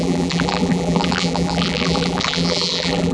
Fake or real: fake